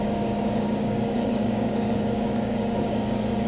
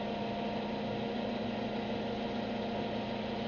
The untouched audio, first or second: second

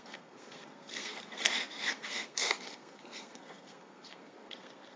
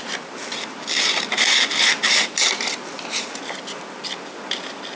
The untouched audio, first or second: second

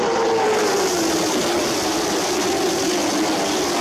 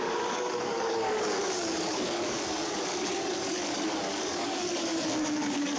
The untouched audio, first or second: first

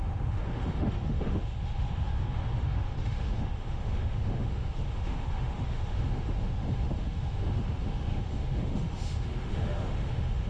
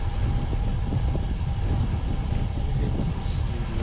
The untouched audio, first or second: second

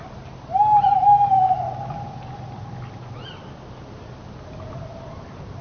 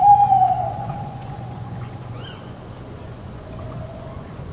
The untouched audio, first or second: first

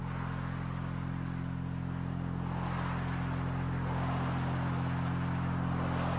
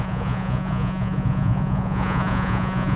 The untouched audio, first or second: first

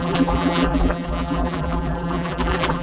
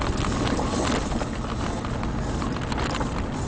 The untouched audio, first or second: second